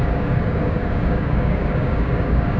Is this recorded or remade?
remade